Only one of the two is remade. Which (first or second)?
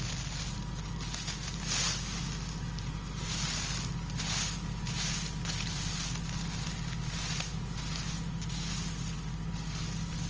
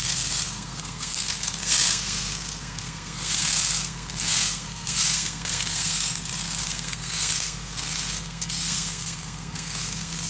second